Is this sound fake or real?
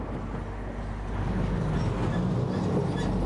real